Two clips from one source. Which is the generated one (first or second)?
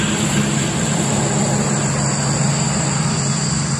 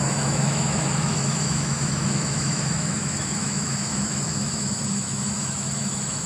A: second